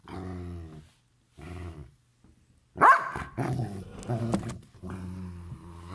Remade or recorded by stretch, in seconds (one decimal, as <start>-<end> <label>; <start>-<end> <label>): 0.0-1.1 recorded; 1.1-2.1 remade; 2.1-4.2 recorded; 4.2-5.9 remade